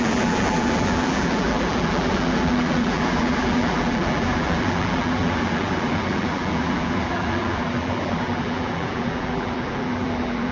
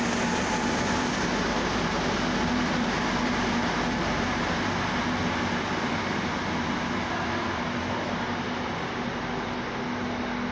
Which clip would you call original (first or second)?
second